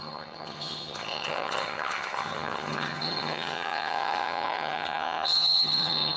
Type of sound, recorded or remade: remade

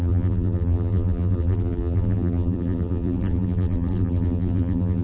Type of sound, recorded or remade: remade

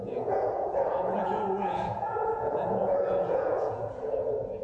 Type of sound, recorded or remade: remade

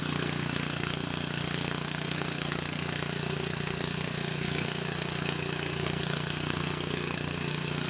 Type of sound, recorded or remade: remade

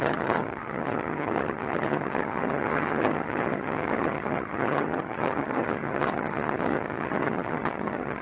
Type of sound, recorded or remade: remade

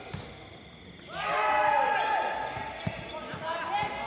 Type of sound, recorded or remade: recorded